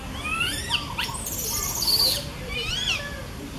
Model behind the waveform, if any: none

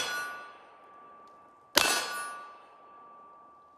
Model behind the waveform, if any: none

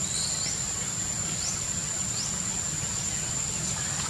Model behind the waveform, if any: none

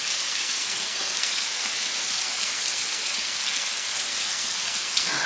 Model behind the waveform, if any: codec, SNAC